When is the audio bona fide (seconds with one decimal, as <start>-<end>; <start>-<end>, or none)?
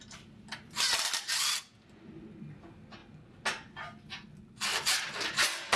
0.0-4.7